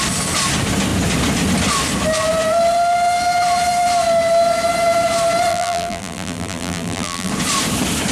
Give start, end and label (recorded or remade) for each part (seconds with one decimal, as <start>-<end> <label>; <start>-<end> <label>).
0.0-5.5 recorded; 5.5-7.3 remade; 7.3-8.1 recorded